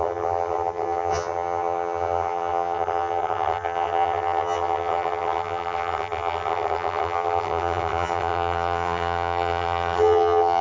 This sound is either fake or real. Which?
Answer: fake